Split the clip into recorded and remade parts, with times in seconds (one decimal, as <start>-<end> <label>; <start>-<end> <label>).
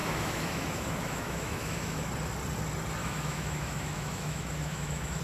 0.0-2.1 remade; 2.1-3.0 recorded; 3.0-5.2 remade